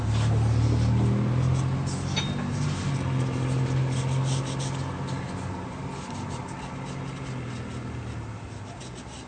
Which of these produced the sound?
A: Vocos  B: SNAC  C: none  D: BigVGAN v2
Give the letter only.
C